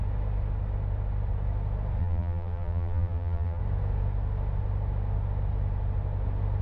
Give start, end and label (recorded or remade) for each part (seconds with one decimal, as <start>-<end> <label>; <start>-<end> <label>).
0.0-2.0 recorded; 2.0-3.6 remade; 3.6-6.6 recorded